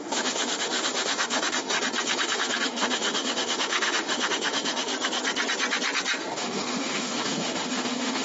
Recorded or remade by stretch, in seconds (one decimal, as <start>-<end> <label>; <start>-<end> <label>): 0.0-4.9 remade; 4.9-6.2 recorded; 6.2-8.2 remade